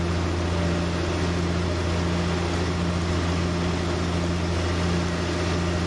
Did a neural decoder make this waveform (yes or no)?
no